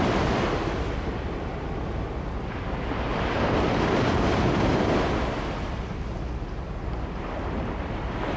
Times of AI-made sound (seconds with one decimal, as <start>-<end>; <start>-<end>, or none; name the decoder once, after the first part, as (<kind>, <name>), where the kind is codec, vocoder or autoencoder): 3.1-4.5 (vocoder, BigVGAN v2)